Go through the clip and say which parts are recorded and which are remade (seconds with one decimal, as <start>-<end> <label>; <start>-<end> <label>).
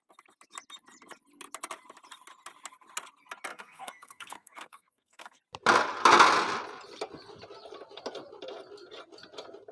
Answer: 0.0-3.5 recorded; 3.5-5.4 remade; 5.4-9.7 recorded